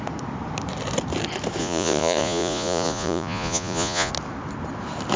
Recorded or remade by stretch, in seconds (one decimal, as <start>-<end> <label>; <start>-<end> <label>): 0.0-1.6 recorded; 1.6-4.1 remade; 4.1-5.2 recorded